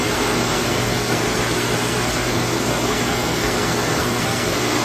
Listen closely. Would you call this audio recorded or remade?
remade